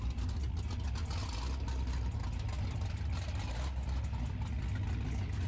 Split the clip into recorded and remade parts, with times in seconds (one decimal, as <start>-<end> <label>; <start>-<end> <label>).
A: 0.0-5.5 recorded